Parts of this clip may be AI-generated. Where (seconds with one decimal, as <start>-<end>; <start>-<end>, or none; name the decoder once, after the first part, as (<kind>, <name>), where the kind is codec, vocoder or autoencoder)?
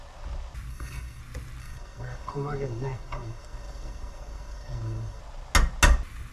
0.7-1.2 (codec, SNAC); 1.6-5.2